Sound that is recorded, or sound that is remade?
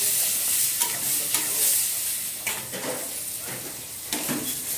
recorded